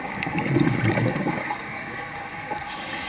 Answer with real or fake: fake